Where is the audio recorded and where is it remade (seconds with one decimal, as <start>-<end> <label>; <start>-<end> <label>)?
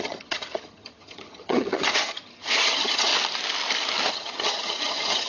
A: 0.0-3.1 remade; 3.1-4.1 recorded; 4.1-5.3 remade